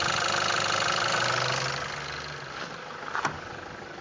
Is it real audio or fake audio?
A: real